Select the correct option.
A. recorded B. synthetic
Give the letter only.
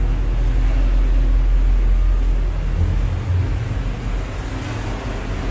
A